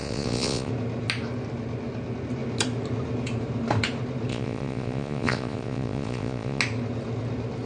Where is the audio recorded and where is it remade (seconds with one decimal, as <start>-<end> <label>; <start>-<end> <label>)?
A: 0.0-0.7 remade; 0.7-4.3 recorded; 4.3-6.6 remade; 6.6-7.7 recorded